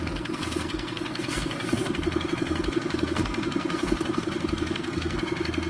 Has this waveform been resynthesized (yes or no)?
yes